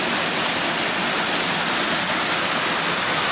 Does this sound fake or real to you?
real